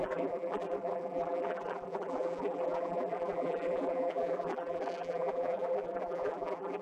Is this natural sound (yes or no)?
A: no